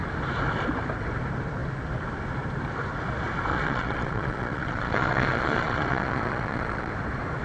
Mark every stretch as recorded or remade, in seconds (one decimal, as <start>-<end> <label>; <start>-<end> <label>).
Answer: 0.0-3.5 recorded; 3.5-6.9 remade; 6.9-7.4 recorded